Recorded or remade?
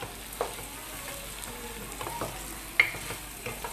recorded